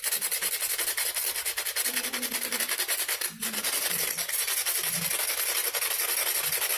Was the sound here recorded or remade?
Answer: recorded